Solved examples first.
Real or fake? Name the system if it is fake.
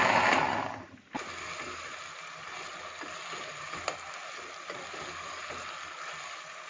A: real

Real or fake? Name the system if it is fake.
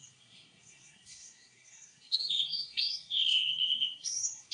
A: fake, codec, SNAC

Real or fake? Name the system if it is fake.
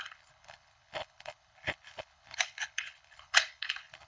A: fake, codec, HILCodec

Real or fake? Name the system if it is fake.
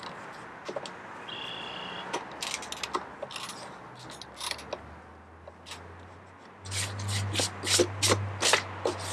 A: real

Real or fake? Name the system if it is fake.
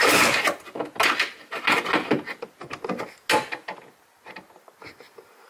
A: real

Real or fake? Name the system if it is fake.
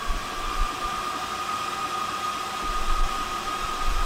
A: fake, vocoder, BigVGAN v2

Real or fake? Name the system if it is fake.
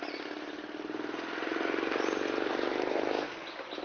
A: real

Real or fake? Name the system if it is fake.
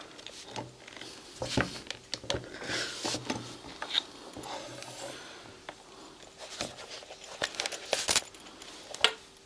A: real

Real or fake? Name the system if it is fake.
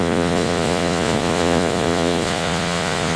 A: fake, vocoder, Vocos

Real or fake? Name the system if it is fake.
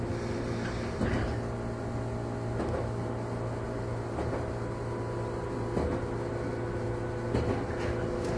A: real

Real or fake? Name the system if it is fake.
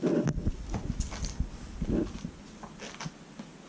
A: real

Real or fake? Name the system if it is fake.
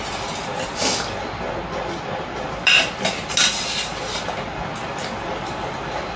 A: real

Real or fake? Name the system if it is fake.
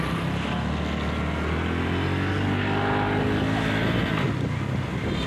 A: real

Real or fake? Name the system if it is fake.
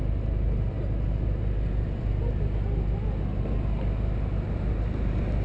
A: real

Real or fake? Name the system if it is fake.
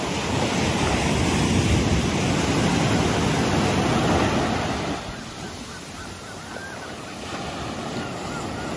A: real